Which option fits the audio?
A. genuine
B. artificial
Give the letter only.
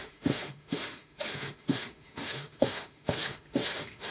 B